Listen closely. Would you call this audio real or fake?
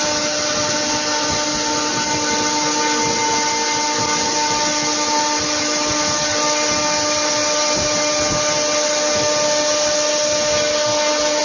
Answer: real